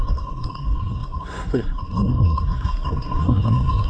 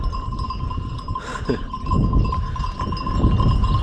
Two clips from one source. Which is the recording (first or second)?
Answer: second